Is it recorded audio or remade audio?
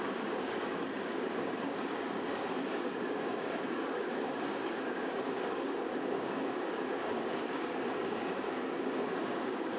remade